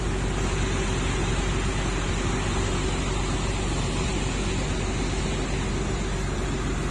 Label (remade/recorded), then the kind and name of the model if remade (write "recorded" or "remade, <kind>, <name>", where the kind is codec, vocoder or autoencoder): recorded